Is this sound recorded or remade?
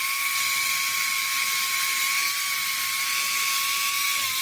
recorded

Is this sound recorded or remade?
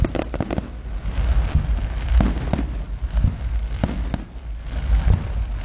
recorded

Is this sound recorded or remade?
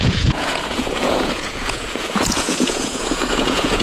remade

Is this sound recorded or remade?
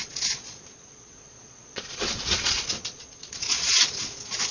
remade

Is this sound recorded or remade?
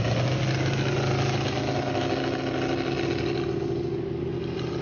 recorded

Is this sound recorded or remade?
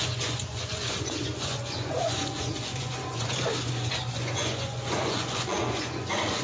remade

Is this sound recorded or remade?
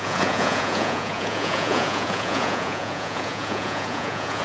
remade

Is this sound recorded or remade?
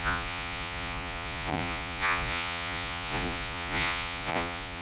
remade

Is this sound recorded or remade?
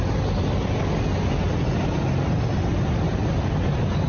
recorded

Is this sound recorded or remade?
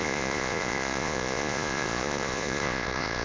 remade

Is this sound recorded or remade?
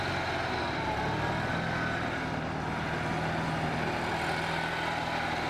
recorded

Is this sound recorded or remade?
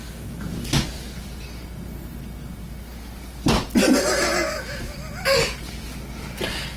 recorded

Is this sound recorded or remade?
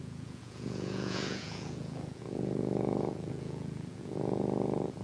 remade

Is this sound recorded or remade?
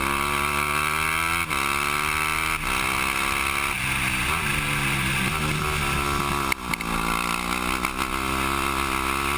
recorded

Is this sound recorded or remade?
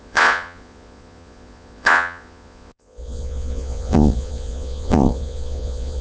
remade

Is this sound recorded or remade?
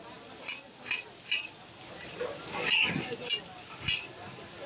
recorded